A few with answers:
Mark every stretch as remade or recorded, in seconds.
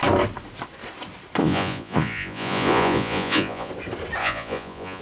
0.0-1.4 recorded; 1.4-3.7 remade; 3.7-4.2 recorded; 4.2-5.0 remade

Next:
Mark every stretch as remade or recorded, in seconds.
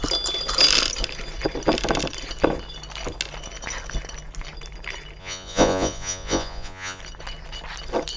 0.0-5.2 recorded; 5.2-7.0 remade; 7.0-8.2 recorded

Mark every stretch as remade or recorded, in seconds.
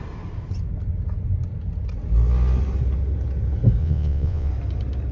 0.0-3.8 recorded; 3.8-4.5 remade; 4.5-5.1 recorded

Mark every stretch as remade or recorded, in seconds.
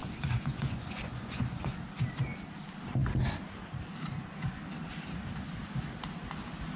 0.0-1.8 remade; 1.8-6.8 recorded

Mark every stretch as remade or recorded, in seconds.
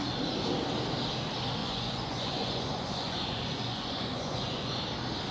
0.0-1.6 recorded; 1.6-4.8 remade; 4.8-5.3 recorded